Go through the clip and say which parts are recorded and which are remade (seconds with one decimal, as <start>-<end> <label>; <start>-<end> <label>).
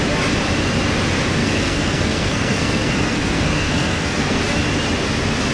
0.0-1.4 recorded; 1.4-4.4 remade; 4.4-5.5 recorded